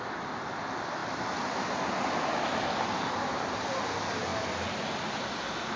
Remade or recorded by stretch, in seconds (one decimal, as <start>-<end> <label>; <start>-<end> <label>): 0.0-5.8 recorded